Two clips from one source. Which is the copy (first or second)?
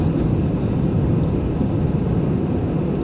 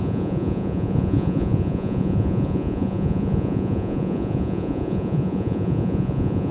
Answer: second